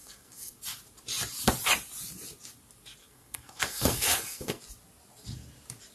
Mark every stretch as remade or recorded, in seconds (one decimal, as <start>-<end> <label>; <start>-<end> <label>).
0.0-0.6 remade; 0.6-3.0 recorded; 3.0-4.6 remade; 4.6-5.9 recorded